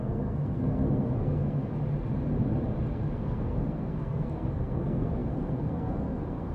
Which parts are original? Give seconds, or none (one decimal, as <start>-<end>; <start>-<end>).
1.7-2.9